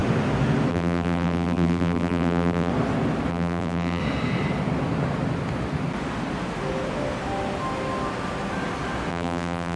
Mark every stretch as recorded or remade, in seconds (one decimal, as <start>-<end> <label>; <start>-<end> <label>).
0.0-0.7 recorded; 0.7-2.7 remade; 2.7-3.3 recorded; 3.3-4.0 remade; 4.0-9.1 recorded; 9.1-9.8 remade